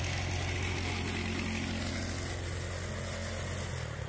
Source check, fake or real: real